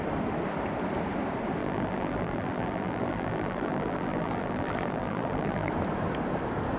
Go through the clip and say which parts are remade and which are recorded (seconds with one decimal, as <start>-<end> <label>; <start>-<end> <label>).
0.0-1.6 recorded; 1.6-5.7 remade; 5.7-6.8 recorded